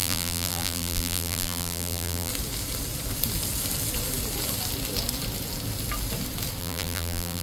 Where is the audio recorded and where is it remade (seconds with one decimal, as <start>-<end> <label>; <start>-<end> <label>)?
0.0-2.3 remade; 2.3-6.6 recorded; 6.6-7.4 remade